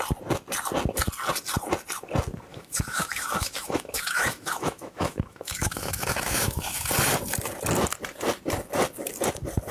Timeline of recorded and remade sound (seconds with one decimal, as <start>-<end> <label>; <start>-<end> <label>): 0.0-2.5 recorded; 2.5-6.9 remade; 6.9-9.7 recorded